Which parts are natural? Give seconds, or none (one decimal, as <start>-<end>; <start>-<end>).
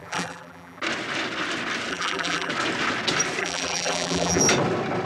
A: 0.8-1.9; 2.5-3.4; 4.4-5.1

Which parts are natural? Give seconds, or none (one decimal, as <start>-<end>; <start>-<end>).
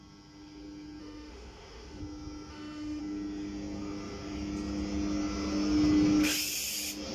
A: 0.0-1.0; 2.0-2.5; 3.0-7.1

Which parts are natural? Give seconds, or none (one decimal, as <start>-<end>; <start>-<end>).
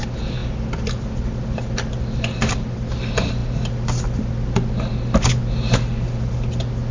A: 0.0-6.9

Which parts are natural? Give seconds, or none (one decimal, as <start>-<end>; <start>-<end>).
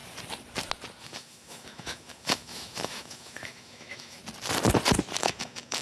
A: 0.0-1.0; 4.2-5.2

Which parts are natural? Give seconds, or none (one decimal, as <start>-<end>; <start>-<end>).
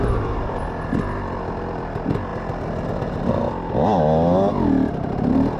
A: 0.0-5.6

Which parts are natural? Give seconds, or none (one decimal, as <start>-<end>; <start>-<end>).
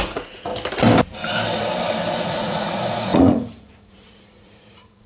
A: 0.5-2.2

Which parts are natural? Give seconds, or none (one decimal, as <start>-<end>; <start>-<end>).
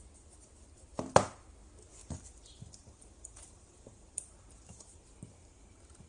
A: 0.0-2.0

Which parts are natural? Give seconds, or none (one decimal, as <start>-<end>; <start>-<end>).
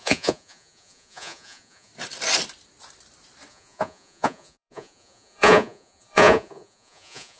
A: 1.9-3.5